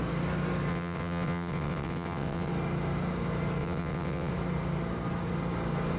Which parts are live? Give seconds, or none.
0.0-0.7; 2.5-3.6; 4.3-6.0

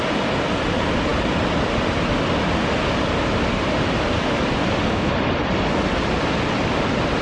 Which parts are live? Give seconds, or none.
0.0-7.2

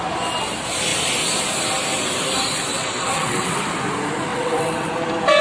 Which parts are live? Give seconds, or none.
0.0-2.7; 3.6-4.3; 4.9-5.4

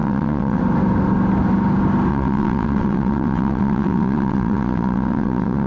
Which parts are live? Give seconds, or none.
0.6-2.1

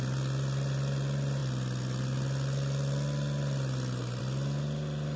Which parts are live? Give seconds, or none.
0.0-5.2

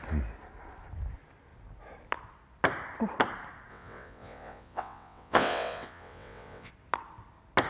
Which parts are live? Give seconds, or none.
0.0-3.7; 6.7-7.7

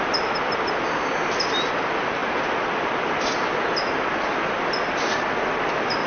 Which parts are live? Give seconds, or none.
0.0-6.1